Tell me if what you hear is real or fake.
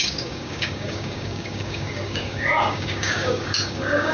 fake